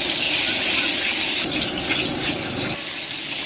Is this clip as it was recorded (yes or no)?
yes